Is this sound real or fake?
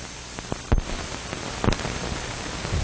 real